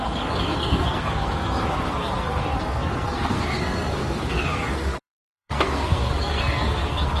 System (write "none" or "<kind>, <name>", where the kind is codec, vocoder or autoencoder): codec, SNAC